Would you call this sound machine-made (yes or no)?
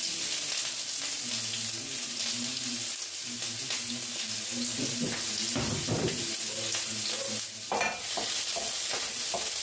no